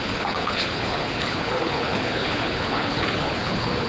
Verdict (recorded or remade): remade